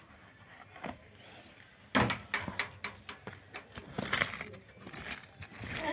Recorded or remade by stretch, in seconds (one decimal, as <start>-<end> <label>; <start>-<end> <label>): 0.0-5.9 recorded